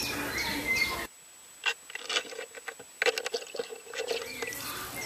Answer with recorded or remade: recorded